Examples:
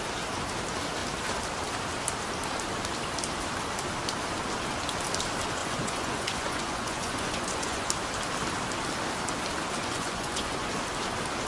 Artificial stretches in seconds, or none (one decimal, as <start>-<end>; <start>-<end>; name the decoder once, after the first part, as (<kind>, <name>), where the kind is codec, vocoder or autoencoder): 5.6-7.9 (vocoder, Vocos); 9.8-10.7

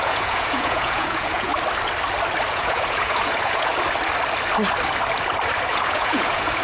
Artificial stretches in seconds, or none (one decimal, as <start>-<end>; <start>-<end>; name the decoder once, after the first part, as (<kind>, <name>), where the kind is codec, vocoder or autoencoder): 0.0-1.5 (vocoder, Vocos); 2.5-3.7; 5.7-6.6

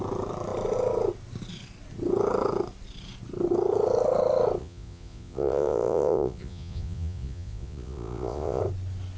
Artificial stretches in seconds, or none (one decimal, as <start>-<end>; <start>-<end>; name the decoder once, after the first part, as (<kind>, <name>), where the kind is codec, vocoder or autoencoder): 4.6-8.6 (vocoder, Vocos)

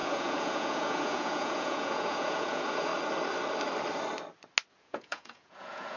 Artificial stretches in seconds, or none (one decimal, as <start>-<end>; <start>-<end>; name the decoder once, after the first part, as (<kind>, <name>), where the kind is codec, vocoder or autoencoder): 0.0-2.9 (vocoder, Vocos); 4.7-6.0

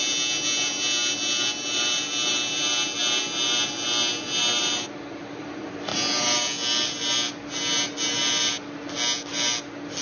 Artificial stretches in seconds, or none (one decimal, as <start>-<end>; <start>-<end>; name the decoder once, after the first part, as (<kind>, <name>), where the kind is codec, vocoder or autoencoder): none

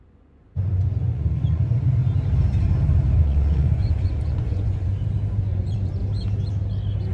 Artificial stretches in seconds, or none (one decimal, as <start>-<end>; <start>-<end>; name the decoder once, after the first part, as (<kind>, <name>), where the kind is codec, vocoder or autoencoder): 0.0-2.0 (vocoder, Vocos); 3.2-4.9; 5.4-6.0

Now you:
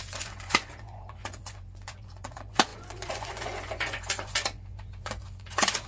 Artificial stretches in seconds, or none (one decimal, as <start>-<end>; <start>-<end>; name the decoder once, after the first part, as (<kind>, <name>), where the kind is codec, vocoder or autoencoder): 0.0-5.9 (vocoder, Vocos)